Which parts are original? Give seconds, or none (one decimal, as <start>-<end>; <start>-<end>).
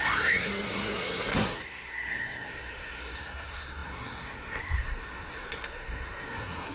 none